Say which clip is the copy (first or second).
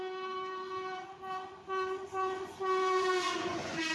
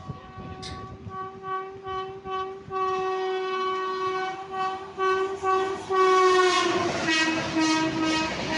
first